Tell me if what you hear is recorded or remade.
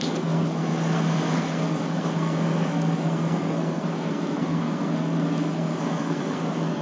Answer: remade